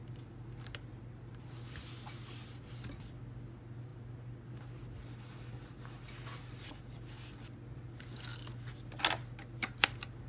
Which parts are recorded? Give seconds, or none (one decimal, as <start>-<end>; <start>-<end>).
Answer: 0.0-10.3